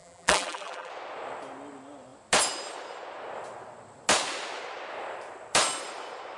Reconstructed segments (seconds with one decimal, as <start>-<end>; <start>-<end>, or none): 0.0-0.9